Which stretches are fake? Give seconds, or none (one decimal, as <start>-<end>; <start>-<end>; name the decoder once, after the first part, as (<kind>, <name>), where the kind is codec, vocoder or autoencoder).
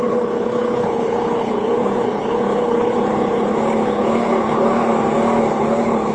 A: 0.0-4.9 (codec, HILCodec); 5.4-6.1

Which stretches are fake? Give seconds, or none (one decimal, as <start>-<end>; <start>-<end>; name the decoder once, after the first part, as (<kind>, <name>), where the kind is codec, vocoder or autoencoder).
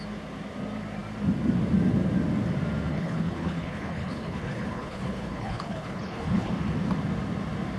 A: 2.9-6.5 (codec, HILCodec)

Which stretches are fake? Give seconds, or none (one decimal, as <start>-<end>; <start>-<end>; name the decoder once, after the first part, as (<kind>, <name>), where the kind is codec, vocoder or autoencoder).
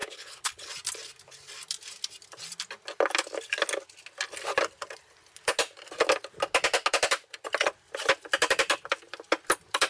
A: 0.0-0.7 (codec, HILCodec)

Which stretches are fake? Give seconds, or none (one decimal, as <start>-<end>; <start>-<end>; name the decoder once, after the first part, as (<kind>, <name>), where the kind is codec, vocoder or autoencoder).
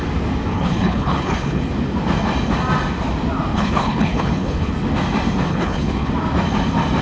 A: 0.5-1.6 (codec, HILCodec); 3.5-4.7; 5.5-6.1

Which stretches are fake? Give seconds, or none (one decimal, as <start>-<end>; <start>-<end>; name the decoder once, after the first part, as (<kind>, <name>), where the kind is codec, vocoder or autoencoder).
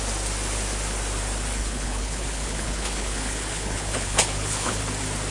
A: 1.6-4.8 (codec, HILCodec)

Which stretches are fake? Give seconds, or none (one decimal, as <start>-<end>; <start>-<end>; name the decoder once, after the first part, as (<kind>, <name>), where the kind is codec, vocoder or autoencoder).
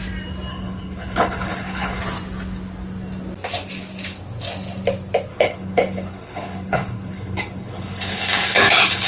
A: 0.5-2.0 (codec, HILCodec); 5.3-9.1